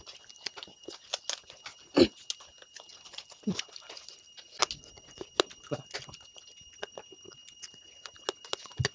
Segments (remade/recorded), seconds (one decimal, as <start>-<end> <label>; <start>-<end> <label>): 0.0-8.9 recorded